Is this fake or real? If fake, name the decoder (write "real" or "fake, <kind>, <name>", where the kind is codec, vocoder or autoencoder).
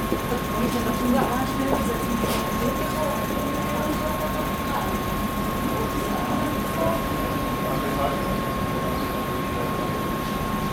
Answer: real